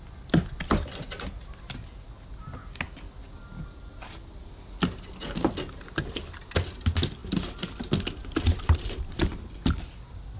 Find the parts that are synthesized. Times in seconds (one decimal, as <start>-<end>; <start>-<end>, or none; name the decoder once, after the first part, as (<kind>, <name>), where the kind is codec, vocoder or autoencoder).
none